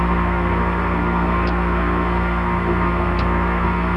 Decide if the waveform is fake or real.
fake